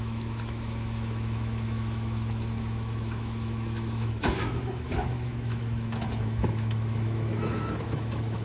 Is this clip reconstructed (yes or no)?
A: yes